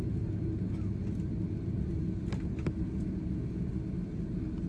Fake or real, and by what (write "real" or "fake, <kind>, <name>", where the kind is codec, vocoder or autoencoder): real